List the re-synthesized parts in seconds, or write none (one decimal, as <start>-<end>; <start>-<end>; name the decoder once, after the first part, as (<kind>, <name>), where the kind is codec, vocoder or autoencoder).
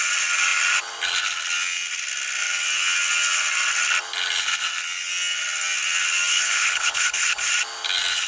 6.3-7.5 (codec, HILCodec)